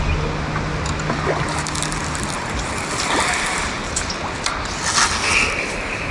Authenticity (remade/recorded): recorded